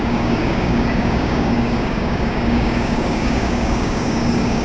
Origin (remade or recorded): remade